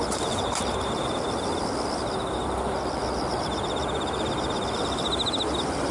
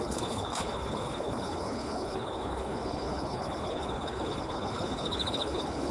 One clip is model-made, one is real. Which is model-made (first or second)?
second